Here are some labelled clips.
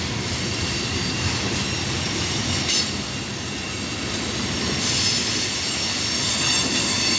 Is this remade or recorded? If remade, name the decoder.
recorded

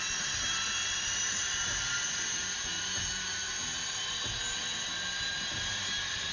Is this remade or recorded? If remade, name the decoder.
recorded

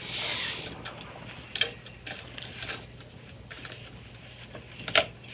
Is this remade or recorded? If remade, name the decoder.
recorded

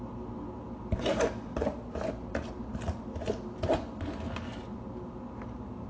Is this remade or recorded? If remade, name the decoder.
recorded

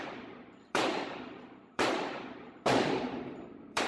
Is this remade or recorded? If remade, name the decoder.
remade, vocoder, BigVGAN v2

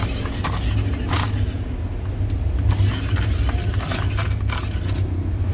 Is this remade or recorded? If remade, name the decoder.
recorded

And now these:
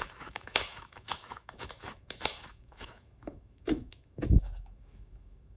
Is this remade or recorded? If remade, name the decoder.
remade, autoencoder, DAC-VAE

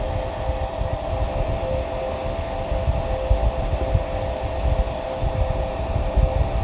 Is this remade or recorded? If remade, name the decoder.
recorded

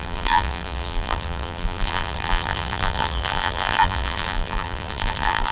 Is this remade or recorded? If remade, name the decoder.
remade, vocoder, BigVGAN v2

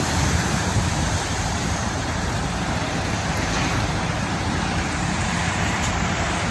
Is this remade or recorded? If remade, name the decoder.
remade, vocoder, BigVGAN v2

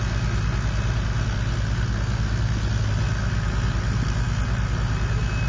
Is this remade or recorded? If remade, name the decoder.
recorded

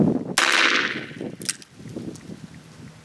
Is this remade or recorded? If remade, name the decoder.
recorded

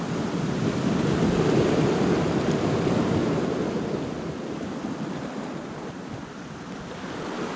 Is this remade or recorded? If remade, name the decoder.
recorded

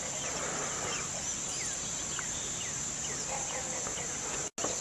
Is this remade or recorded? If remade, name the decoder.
recorded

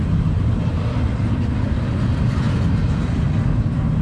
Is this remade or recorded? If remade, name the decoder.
recorded